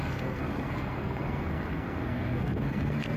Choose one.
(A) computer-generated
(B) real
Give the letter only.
A